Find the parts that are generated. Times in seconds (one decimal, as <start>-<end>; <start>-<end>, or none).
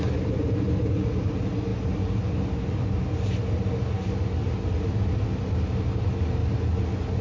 none